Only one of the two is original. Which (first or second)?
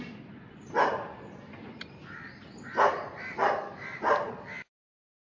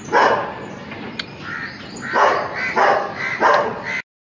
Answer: second